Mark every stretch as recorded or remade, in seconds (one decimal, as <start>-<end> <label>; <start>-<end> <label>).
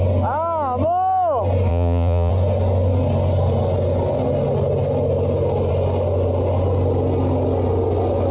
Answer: 0.0-1.7 recorded; 1.7-2.3 remade; 2.3-8.3 recorded